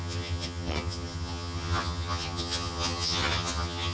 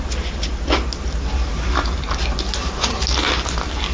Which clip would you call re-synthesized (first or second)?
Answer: first